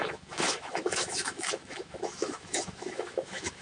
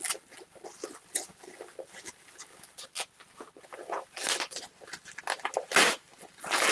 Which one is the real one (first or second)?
second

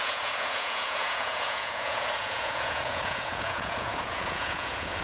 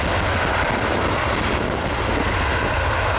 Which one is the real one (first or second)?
second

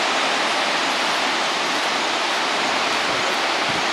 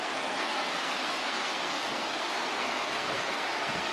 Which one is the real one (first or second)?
first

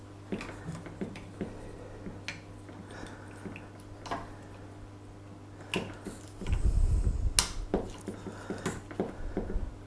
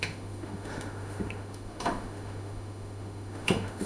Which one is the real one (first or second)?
first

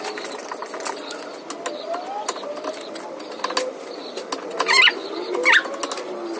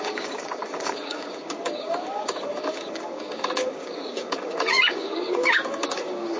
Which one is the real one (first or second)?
first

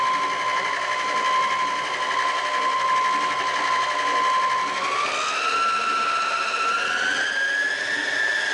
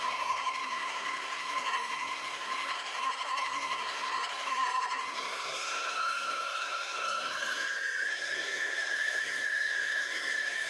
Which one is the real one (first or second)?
first